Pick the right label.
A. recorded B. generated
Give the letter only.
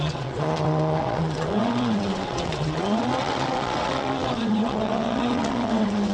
B